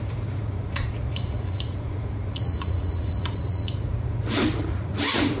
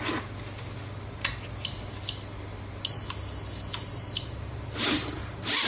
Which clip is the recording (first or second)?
second